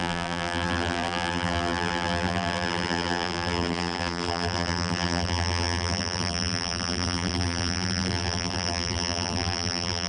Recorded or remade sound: remade